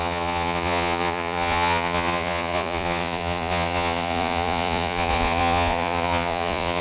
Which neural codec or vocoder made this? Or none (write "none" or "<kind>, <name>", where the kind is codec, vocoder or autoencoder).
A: vocoder, Vocos